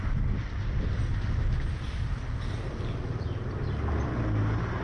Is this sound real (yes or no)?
yes